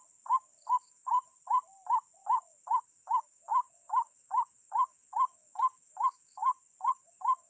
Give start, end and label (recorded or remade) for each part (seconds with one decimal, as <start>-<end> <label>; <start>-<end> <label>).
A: 0.0-0.7 recorded; 0.7-1.3 remade; 1.3-2.8 recorded; 2.8-6.4 remade; 6.4-6.9 recorded; 6.9-7.5 remade